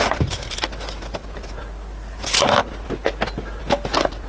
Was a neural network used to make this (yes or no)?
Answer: no